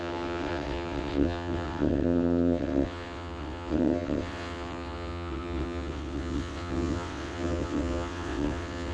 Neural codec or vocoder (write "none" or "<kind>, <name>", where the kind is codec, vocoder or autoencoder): vocoder, WaveNeXt